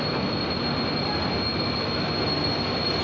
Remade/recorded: recorded